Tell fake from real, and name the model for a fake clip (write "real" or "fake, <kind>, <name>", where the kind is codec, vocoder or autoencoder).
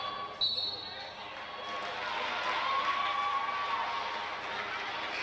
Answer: real